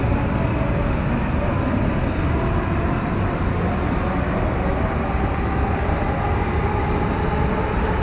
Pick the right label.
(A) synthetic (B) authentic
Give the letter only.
B